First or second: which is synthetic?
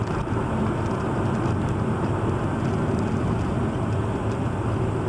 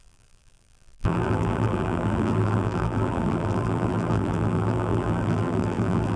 second